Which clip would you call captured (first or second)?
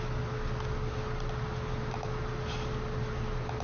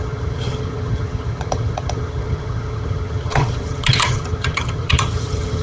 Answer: first